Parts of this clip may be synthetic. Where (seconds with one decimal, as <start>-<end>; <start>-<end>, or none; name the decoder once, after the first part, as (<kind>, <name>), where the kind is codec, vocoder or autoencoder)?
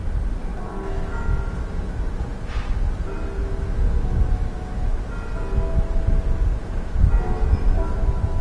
3.4-5.0 (autoencoder, DAC-VAE); 6.5-7.1